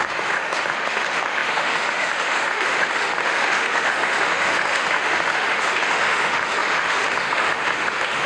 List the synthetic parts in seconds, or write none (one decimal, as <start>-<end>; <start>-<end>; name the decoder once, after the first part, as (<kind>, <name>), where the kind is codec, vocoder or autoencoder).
0.0-8.3 (autoencoder, DAC-VAE)